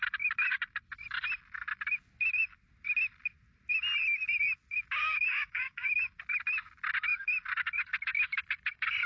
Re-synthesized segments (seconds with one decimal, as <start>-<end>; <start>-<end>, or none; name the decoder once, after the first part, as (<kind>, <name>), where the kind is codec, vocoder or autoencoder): 5.0-6.2 (codec, DAC)